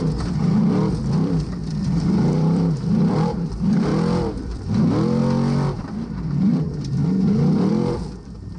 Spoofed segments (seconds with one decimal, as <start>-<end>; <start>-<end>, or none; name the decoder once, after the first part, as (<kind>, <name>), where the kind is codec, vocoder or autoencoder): 0.0-3.9 (vocoder, BigVGAN v2); 4.4-5.2; 5.8-7.0; 7.7-8.6